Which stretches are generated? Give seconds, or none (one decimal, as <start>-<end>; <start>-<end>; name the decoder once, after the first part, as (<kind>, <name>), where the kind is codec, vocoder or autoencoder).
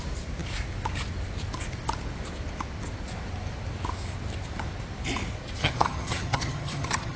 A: 5.6-7.2 (vocoder, HiFi-GAN)